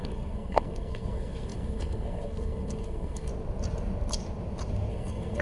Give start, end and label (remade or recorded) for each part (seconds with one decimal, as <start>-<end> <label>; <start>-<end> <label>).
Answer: 0.0-3.3 remade; 3.3-4.9 recorded; 4.9-5.4 remade

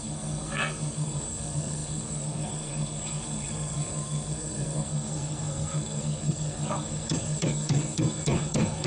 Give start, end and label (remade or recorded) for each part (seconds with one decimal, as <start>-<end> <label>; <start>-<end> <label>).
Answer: 0.0-8.9 remade